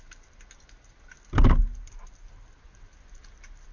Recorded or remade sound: recorded